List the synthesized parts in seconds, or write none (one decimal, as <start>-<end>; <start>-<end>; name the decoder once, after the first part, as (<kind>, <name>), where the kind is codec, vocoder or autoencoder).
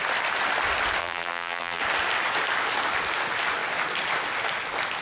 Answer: 1.0-1.8 (vocoder, BigVGAN v2)